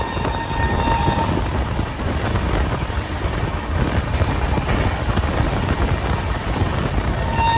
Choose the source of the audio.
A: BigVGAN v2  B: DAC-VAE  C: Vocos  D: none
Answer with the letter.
D